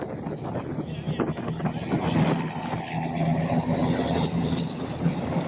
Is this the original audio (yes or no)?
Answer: yes